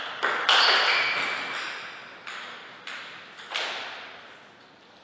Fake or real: real